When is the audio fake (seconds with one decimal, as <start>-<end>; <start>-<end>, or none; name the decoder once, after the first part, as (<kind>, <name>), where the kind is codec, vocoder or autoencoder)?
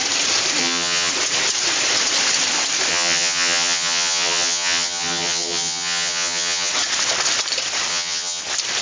0.6-1.1 (vocoder, HiFi-GAN); 2.9-6.7; 7.9-8.4